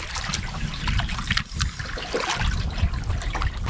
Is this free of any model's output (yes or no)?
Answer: yes